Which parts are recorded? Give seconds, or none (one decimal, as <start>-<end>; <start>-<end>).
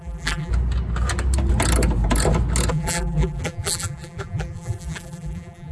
0.5-2.7